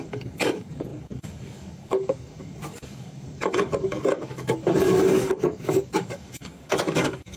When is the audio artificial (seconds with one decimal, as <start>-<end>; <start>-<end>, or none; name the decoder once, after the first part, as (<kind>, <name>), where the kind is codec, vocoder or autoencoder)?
0.0-7.4 (codec, DAC)

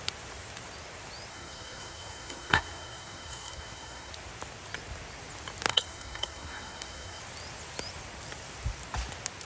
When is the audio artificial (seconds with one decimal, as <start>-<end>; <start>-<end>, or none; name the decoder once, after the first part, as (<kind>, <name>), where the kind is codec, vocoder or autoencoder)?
1.3-4.1 (codec, SNAC); 5.7-7.2

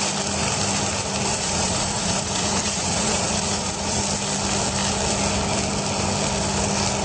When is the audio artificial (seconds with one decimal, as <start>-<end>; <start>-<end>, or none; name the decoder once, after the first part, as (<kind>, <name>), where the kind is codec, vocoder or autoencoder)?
1.3-4.0 (vocoder, Vocos)

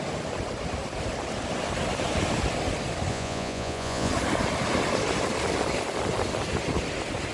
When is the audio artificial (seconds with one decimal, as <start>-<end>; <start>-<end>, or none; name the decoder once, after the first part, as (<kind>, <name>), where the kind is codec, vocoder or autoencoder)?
3.1-4.1 (vocoder, Vocos)

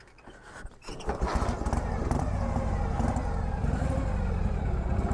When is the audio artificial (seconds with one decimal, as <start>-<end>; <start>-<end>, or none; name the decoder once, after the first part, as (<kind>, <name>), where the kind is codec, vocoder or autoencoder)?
none

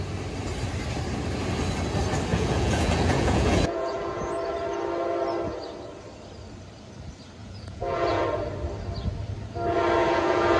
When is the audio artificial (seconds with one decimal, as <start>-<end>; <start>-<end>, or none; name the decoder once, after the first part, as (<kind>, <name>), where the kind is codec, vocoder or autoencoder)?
2.3-4.3 (vocoder, Vocos); 7.4-8.2; 10.0-10.6

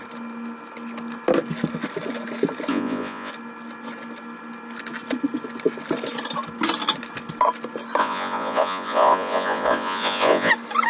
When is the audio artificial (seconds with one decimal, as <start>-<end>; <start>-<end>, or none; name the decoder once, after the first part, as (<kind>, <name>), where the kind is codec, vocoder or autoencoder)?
2.7-3.3 (vocoder, Vocos); 8.0-10.5

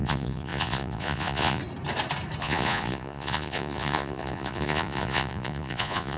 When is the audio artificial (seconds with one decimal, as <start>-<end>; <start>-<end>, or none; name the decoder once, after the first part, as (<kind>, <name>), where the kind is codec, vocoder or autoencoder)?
0.0-1.6 (vocoder, Vocos); 2.4-6.2